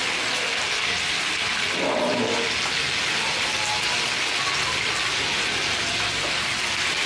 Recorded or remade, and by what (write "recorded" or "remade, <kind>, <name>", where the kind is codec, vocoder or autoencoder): recorded